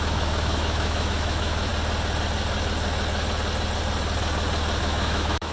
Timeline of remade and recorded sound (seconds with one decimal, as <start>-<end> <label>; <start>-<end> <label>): 0.0-1.7 remade; 1.7-4.8 recorded; 4.8-5.5 remade